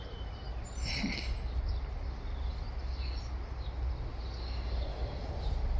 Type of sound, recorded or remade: recorded